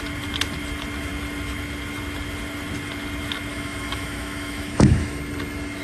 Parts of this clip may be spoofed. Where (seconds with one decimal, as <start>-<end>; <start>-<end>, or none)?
3.5-5.2